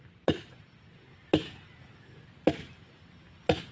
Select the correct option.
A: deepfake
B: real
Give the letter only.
B